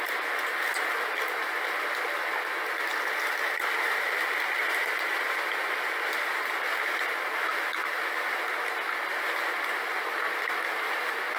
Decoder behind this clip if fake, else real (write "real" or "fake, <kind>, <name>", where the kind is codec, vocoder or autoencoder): real